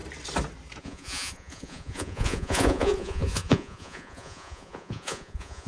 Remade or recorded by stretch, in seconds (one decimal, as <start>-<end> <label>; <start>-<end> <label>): 0.0-0.8 recorded; 0.8-5.7 remade